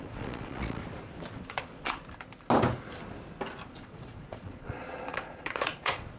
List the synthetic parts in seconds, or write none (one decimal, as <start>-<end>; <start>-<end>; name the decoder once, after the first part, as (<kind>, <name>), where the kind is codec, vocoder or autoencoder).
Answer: 0.0-0.8 (vocoder, Vocos); 1.5-2.0; 3.7-6.2